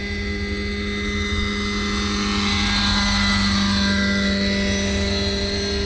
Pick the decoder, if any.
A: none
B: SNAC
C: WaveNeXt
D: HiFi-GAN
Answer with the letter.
A